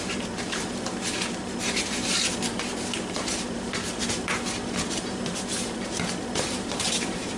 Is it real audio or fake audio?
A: fake